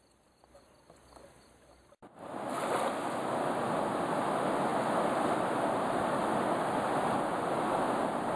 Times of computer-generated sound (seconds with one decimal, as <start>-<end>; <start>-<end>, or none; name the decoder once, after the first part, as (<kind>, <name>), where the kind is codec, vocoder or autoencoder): none

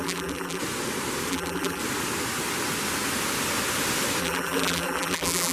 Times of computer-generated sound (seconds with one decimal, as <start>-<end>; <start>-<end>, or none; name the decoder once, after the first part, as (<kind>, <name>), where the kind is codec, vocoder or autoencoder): 0.0-0.6 (vocoder, BigVGAN v2); 1.3-1.8; 4.2-5.5

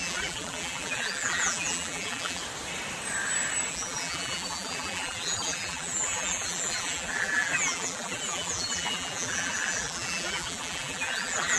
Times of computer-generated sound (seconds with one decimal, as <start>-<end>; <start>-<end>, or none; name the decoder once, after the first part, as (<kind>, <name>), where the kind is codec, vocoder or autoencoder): 0.0-2.4 (vocoder, BigVGAN v2); 3.7-11.6

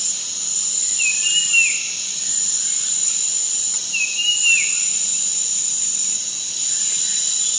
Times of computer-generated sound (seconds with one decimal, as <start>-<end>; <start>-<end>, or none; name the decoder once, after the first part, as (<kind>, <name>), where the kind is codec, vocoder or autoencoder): 0.0-7.6 (vocoder, BigVGAN v2)

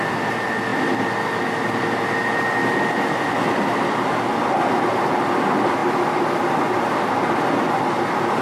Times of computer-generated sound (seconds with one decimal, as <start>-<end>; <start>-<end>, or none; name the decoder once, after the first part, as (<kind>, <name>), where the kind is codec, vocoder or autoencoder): 5.8-7.0 (vocoder, BigVGAN v2)

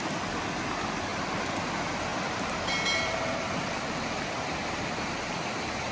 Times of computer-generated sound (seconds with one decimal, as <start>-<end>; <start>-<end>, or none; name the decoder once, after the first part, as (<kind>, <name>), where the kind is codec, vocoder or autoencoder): 1.1-1.6 (vocoder, BigVGAN v2); 2.1-3.8

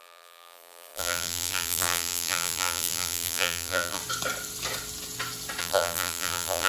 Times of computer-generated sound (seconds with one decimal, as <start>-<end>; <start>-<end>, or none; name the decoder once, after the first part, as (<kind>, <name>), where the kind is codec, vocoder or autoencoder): 0.0-4.0 (vocoder, BigVGAN v2); 5.6-6.7

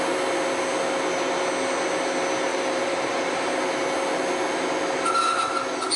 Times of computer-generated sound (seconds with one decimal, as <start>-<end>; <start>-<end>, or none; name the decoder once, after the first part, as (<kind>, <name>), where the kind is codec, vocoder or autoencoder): 2.5-3.5 (vocoder, BigVGAN v2)